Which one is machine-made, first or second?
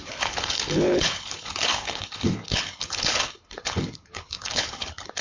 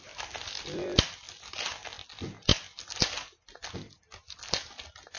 first